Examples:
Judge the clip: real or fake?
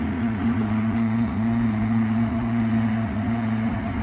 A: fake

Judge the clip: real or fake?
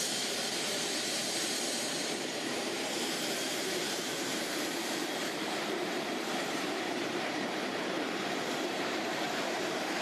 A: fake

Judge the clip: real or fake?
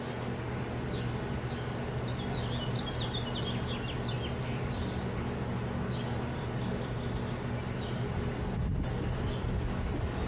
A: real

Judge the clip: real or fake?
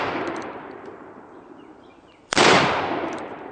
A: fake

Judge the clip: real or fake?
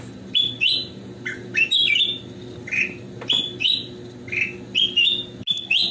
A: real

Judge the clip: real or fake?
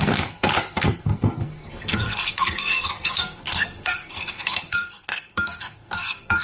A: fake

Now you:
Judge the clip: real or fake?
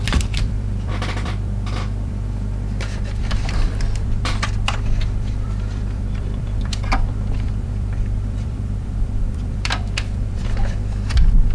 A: fake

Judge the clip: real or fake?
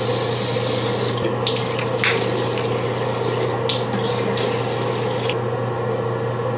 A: real